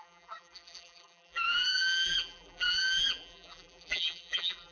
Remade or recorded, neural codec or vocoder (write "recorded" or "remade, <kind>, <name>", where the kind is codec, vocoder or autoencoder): remade, vocoder, BigVGAN v2